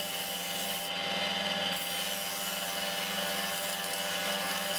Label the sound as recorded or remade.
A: recorded